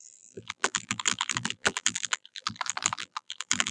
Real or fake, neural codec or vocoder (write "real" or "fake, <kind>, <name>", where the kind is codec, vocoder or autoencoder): fake, vocoder, BigVGAN v2